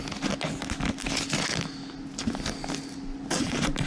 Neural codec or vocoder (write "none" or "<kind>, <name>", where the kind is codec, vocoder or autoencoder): none